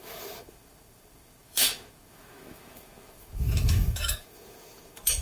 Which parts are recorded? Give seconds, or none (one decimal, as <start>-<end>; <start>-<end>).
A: none